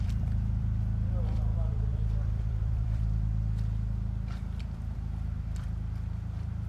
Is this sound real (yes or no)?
no